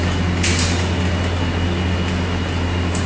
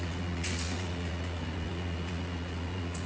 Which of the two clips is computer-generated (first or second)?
second